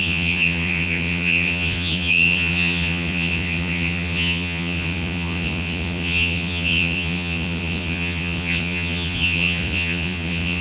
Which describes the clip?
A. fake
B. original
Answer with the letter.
A